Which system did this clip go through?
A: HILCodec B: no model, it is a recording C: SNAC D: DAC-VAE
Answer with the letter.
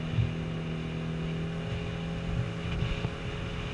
B